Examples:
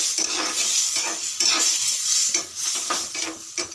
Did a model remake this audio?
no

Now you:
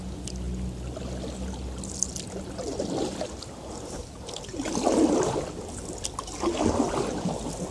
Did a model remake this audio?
no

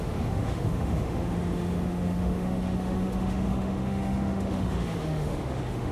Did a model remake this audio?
yes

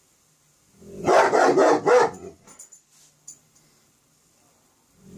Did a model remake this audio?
no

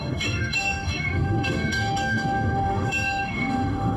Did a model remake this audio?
yes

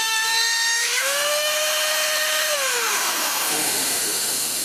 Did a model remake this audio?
yes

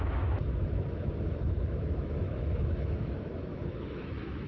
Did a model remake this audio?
yes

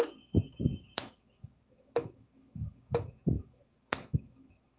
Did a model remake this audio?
yes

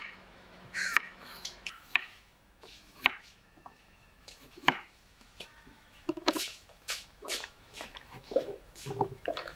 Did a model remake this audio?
yes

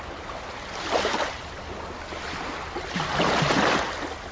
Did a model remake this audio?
no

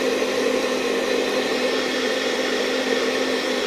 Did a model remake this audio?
no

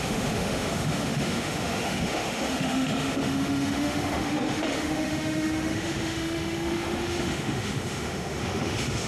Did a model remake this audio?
yes